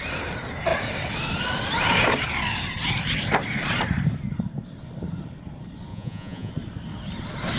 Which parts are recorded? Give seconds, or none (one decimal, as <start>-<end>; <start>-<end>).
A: 0.0-5.9; 6.5-7.6